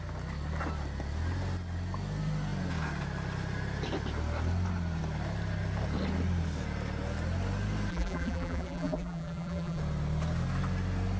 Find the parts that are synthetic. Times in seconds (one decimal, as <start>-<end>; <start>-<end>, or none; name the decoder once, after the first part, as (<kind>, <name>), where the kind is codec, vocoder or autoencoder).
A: 7.9-9.8 (vocoder, BigVGAN v2)